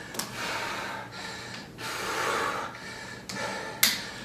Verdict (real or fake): real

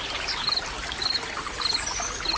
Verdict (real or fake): real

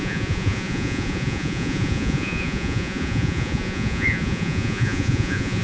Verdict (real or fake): fake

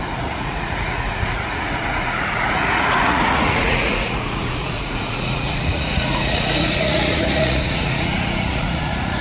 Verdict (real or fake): fake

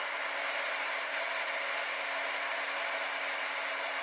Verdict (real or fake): real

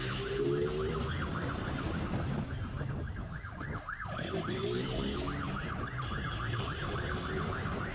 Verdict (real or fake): real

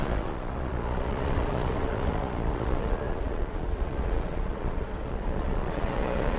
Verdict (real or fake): fake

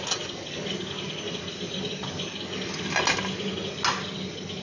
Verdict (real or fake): real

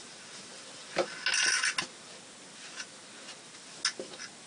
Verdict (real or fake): real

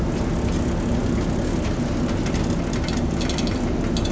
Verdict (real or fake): real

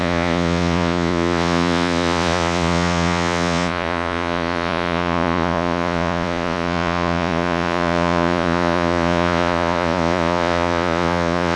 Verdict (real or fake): fake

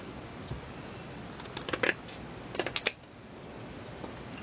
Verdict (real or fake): real